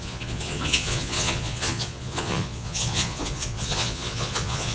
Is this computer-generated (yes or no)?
yes